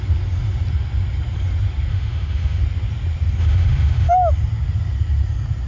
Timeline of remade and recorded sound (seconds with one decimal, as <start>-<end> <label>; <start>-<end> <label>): 0.0-1.9 recorded; 1.9-2.6 remade; 2.6-3.4 recorded; 3.4-4.1 remade; 4.1-5.7 recorded